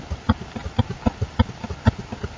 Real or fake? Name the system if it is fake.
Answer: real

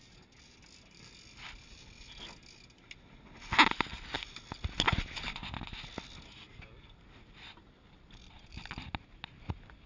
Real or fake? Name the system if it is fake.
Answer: real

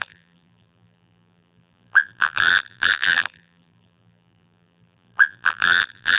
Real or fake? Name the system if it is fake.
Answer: fake, vocoder, BigVGAN v2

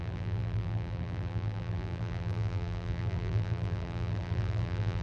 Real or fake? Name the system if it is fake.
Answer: fake, vocoder, BigVGAN v2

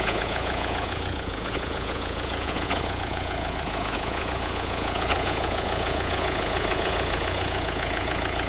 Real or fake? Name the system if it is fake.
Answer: fake, vocoder, Vocos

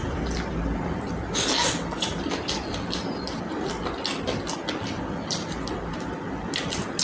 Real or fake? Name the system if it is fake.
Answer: real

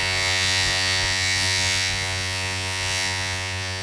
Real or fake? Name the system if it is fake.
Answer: fake, vocoder, Vocos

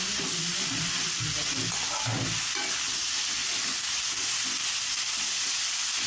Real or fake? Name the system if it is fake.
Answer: real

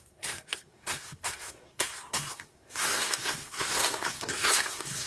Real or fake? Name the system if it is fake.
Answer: fake, codec, SNAC